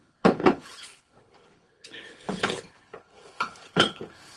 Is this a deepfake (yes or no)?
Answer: yes